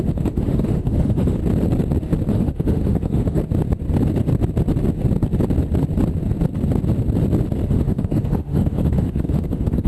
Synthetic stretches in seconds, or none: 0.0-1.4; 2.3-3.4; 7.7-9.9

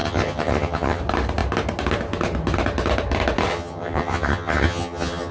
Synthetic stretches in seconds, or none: 0.0-1.0; 3.5-5.3